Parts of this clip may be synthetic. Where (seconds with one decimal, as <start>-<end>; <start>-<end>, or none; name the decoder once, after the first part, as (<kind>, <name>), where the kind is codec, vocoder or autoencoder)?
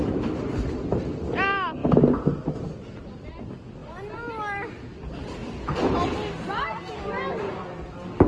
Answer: none